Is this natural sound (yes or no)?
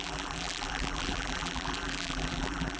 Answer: no